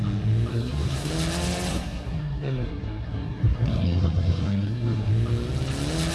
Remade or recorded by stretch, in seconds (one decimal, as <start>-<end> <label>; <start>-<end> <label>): 0.0-0.5 recorded; 0.5-1.1 remade; 1.1-1.7 recorded; 1.7-5.1 remade; 5.1-6.1 recorded